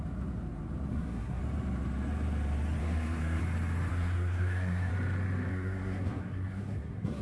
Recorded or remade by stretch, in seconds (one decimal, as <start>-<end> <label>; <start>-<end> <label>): 0.0-0.9 recorded; 0.9-1.4 remade; 1.4-2.8 recorded; 2.8-3.4 remade; 3.4-3.9 recorded; 3.9-4.9 remade; 4.9-5.5 recorded; 5.5-7.2 remade